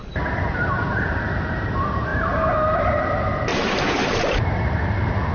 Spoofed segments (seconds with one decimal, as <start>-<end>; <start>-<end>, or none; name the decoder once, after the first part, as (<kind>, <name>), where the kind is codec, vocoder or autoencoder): 0.5-2.1 (vocoder, BigVGAN v2); 2.8-5.3